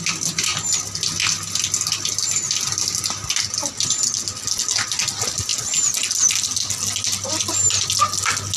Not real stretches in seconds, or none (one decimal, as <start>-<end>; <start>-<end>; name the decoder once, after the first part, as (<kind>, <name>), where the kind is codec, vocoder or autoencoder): none